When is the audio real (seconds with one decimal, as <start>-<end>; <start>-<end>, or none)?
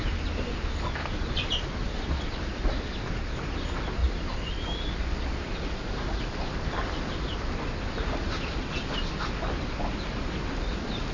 0.0-11.1